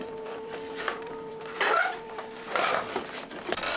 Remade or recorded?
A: remade